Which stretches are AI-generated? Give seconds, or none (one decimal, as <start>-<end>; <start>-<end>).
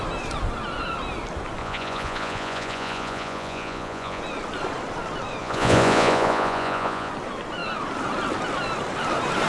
1.6-4.2; 5.4-7.1